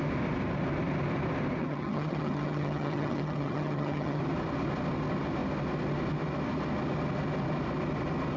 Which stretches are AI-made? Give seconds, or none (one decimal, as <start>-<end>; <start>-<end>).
1.6-4.2